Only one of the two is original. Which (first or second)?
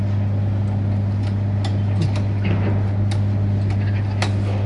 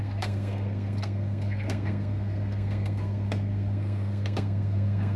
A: first